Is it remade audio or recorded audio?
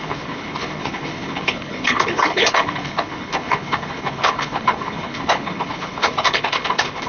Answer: remade